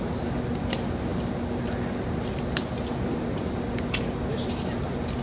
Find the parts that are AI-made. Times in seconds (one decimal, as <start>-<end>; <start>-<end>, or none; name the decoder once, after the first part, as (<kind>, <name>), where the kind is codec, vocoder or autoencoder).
none